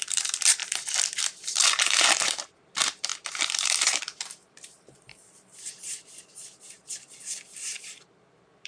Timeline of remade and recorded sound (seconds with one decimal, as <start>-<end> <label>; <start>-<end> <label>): 0.0-0.6 remade; 0.6-1.2 recorded; 1.2-8.7 remade